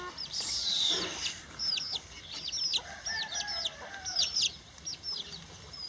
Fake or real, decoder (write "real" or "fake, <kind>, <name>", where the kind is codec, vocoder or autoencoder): real